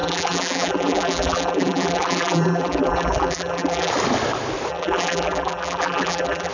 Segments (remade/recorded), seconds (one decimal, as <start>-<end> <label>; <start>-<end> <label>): 0.0-3.9 remade; 3.9-4.7 recorded; 4.7-6.5 remade